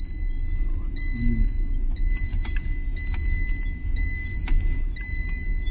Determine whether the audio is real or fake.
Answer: real